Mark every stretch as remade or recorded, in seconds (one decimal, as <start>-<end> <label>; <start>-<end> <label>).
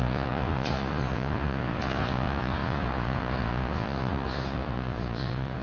0.0-5.6 remade